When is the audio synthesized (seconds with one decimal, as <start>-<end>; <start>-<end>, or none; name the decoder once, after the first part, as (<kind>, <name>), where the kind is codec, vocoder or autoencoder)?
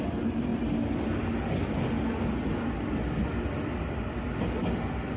none